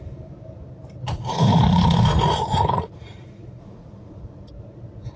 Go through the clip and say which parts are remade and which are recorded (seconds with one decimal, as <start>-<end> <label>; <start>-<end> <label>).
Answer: 0.0-1.1 recorded; 1.1-4.2 remade; 4.2-5.2 recorded